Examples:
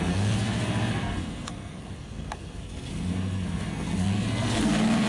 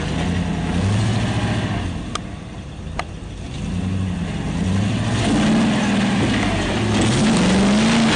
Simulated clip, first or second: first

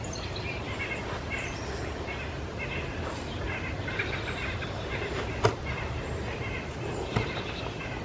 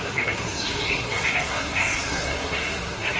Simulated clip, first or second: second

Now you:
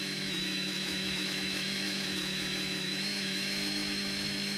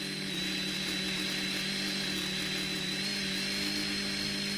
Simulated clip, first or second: first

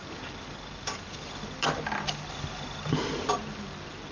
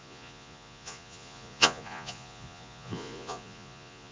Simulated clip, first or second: second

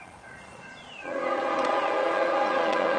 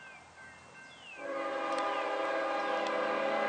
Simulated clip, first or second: first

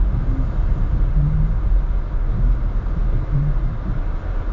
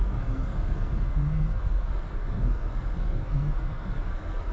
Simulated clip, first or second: second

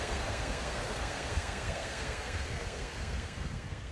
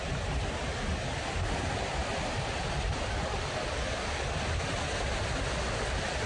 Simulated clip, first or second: first